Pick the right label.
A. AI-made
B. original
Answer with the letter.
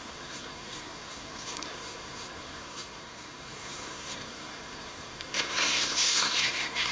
A